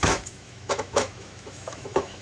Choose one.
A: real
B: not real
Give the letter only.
B